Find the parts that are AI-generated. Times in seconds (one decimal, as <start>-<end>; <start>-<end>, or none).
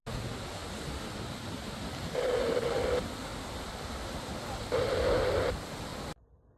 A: 3.3-4.1